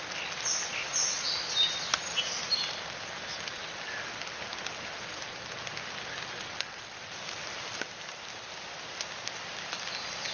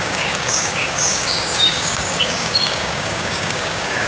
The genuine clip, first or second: first